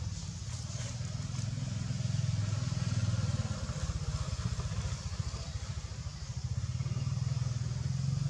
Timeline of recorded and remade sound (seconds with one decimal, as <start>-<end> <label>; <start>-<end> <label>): 0.0-8.3 recorded